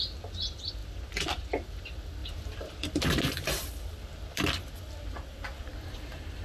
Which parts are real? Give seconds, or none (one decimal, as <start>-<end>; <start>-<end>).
0.0-0.8; 1.8-2.2; 4.7-6.4